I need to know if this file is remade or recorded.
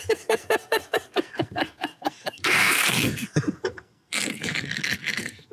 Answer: remade